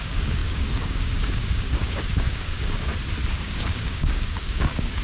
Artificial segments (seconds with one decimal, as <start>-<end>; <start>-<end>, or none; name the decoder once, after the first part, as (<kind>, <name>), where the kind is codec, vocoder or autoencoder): 0.0-2.9 (codec, DAC); 3.4-5.0